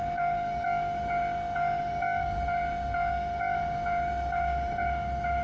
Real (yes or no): no